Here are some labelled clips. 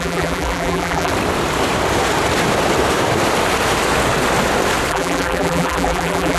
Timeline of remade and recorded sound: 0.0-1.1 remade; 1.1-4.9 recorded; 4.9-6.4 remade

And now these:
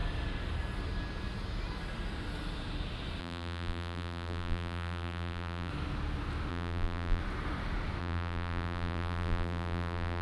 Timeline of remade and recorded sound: 0.0-3.2 recorded; 3.2-5.7 remade; 5.7-6.5 recorded; 6.5-7.2 remade; 7.2-8.0 recorded; 8.0-10.2 remade

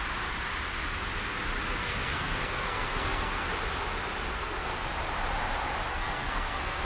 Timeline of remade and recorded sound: 0.0-1.8 recorded; 1.8-3.5 remade; 3.5-4.3 recorded; 4.3-4.9 remade; 4.9-5.9 recorded; 5.9-6.8 remade

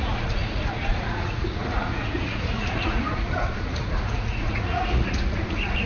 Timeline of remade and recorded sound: 0.0-5.9 remade

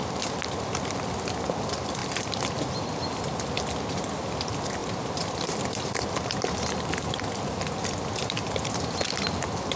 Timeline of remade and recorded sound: 0.0-2.0 recorded; 2.0-2.6 remade; 2.6-4.8 recorded; 4.8-5.6 remade; 5.6-9.8 recorded

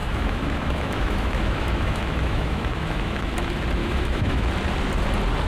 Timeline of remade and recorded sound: 0.0-3.3 remade; 3.3-3.8 recorded; 3.8-4.5 remade; 4.5-5.5 recorded

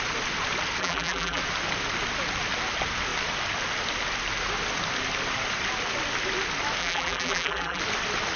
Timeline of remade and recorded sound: 0.0-0.8 recorded; 0.8-1.4 remade; 1.4-6.8 recorded; 6.8-7.8 remade; 7.8-8.4 recorded

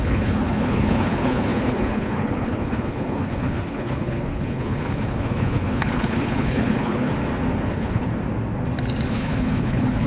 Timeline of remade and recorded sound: 0.0-7.1 remade; 7.1-7.7 recorded; 7.7-8.1 remade; 8.1-9.1 recorded; 9.1-10.1 remade